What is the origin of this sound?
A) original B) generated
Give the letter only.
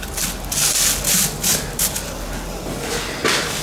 A